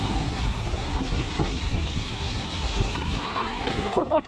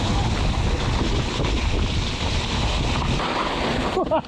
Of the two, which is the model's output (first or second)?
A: first